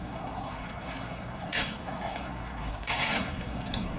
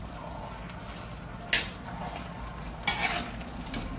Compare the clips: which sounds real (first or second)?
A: second